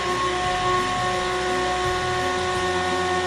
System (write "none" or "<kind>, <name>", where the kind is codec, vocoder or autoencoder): none